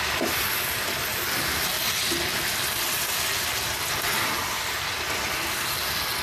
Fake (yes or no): no